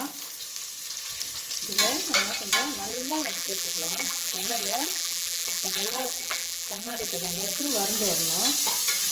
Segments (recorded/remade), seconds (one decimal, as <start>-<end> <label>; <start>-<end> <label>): 0.0-2.9 recorded; 2.9-7.7 remade; 7.7-9.1 recorded